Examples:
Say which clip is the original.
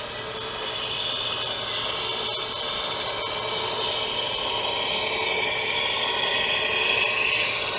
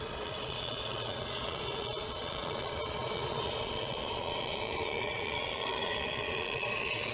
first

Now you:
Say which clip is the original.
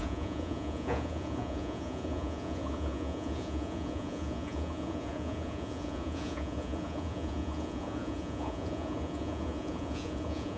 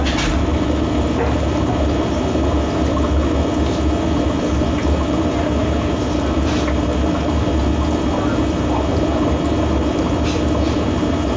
second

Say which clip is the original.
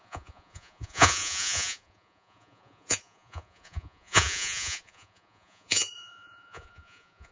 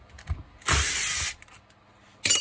second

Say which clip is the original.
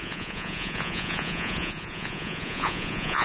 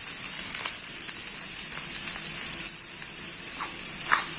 second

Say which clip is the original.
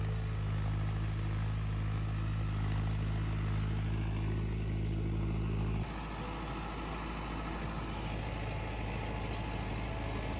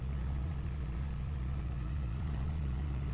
first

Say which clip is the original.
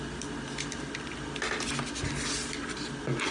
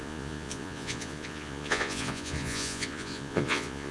first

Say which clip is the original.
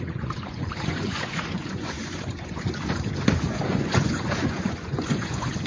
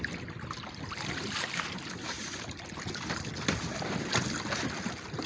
second